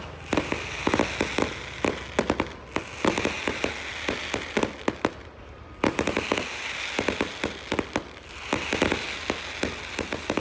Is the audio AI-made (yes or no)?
no